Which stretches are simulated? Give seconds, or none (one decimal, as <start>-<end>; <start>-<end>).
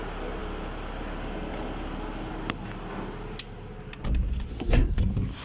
4.5-5.0